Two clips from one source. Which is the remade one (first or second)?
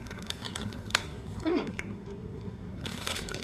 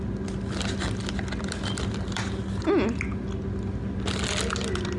first